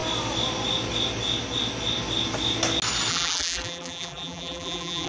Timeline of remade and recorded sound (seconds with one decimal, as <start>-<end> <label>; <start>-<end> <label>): 0.0-3.1 recorded; 3.1-5.1 remade